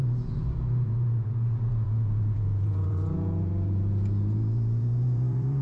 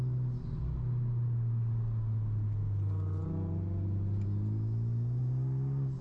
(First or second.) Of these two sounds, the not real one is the first